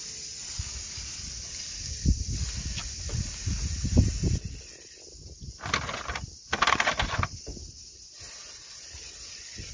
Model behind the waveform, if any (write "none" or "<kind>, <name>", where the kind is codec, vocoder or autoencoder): none